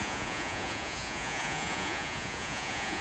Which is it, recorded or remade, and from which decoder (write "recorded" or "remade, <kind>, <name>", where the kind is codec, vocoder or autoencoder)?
remade, vocoder, Vocos